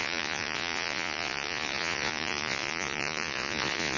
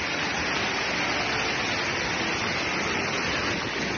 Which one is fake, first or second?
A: first